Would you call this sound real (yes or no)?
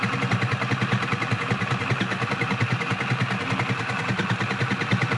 yes